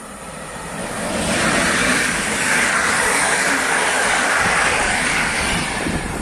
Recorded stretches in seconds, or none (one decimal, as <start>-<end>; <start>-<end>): 0.0-0.8; 1.4-1.8; 5.5-6.2